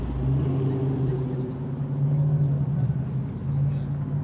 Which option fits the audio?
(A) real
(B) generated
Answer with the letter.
A